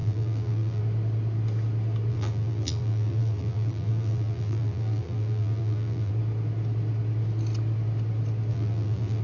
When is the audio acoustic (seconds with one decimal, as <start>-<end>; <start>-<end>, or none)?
0.8-2.1; 6.1-8.5